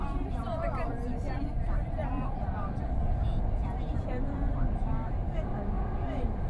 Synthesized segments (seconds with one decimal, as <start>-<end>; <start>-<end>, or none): 3.9-5.5